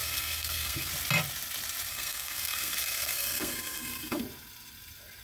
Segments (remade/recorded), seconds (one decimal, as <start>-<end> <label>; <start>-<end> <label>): 0.0-0.9 remade; 0.9-1.9 recorded; 1.9-4.2 remade; 4.2-5.2 recorded